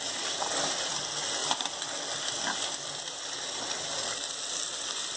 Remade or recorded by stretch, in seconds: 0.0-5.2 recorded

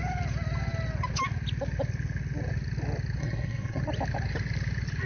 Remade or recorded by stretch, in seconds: 0.0-3.2 recorded; 3.2-3.8 remade; 3.8-5.1 recorded

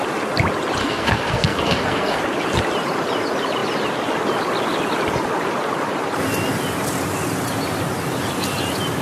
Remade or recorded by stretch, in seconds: 0.0-0.8 recorded; 0.8-2.2 remade; 2.2-9.0 recorded

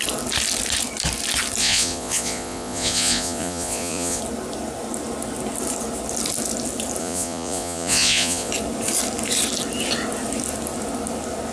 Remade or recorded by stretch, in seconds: 0.0-1.6 recorded; 1.6-4.2 remade; 4.2-7.0 recorded; 7.0-8.5 remade; 8.5-11.5 recorded

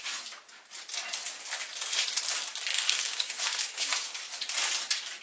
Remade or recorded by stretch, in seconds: 0.0-2.7 recorded; 2.7-4.2 remade; 4.2-5.2 recorded

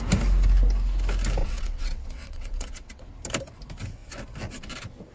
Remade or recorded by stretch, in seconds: 0.0-1.4 recorded; 1.4-3.0 remade; 3.0-5.1 recorded

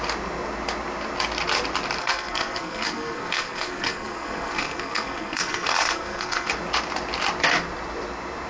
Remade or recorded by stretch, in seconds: 0.0-2.0 recorded; 2.0-6.5 remade; 6.5-8.5 recorded

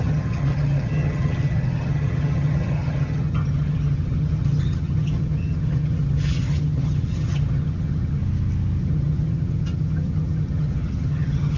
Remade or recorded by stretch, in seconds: 0.0-8.2 remade; 8.2-8.8 recorded; 8.8-11.6 remade